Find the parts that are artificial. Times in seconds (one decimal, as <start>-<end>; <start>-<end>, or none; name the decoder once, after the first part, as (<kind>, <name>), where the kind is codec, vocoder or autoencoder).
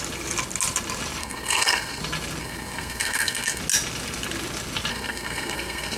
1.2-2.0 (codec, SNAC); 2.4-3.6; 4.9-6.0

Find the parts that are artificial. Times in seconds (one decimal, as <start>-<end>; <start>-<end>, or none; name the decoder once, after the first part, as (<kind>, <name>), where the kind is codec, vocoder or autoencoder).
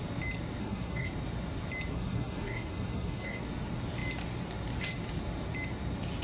0.6-1.1 (codec, SNAC); 1.9-3.4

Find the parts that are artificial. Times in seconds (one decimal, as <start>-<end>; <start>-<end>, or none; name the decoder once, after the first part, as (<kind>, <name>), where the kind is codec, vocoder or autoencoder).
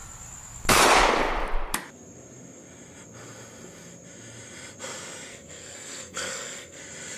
5.3-6.8 (codec, SNAC)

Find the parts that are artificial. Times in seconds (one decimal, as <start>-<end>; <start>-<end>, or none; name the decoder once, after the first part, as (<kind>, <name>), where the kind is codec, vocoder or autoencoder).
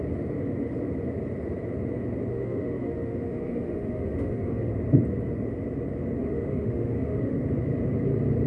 2.3-4.7 (autoencoder, DAC-VAE); 6.2-7.4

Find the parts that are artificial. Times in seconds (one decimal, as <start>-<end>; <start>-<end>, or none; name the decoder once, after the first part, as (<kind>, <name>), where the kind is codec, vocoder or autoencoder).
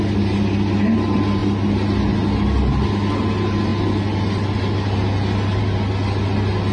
none